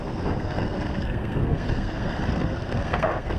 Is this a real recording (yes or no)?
no